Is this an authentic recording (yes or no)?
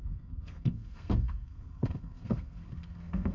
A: no